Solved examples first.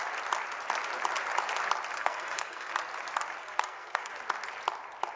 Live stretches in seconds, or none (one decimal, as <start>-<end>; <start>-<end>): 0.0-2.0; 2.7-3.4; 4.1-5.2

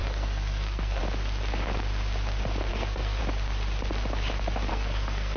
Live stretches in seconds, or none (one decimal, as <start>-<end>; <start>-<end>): 1.0-2.7; 3.2-4.7

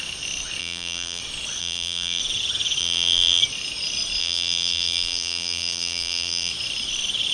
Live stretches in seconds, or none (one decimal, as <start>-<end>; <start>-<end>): 0.0-0.6; 1.2-1.6; 2.2-2.8; 3.4-4.2; 6.5-7.3